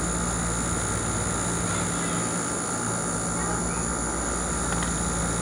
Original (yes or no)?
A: yes